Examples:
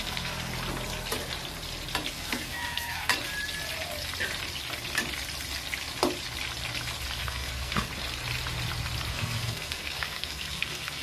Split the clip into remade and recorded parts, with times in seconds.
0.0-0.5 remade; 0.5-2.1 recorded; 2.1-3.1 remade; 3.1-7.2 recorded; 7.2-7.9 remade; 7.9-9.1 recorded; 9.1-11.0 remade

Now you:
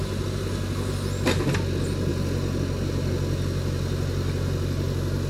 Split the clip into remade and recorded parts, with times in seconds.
0.0-5.3 recorded

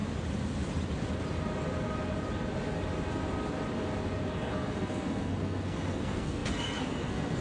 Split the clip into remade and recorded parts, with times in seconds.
0.0-4.3 recorded; 4.3-7.4 remade